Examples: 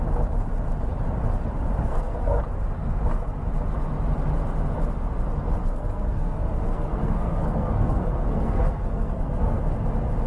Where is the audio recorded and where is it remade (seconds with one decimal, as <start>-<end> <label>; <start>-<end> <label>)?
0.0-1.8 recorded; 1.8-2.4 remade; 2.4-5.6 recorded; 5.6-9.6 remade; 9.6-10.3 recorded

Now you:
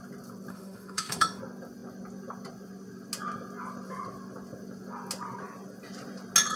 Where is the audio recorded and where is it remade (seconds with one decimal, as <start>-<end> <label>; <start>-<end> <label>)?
0.0-0.5 recorded; 0.5-1.4 remade; 1.4-6.6 recorded

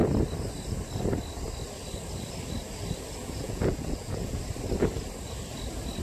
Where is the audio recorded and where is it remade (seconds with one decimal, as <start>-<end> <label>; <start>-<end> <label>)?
0.0-3.2 recorded; 3.2-4.4 remade; 4.4-6.0 recorded

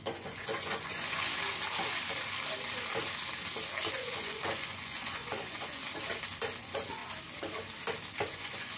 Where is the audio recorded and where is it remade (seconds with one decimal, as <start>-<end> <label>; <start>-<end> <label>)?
0.0-1.3 remade; 1.3-3.9 recorded; 3.9-5.8 remade; 5.8-6.6 recorded; 6.6-7.0 remade; 7.0-8.3 recorded; 8.3-8.8 remade

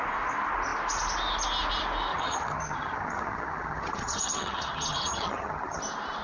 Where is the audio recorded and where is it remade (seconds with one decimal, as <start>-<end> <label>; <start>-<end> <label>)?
0.0-2.1 recorded; 2.1-5.8 remade; 5.8-6.2 recorded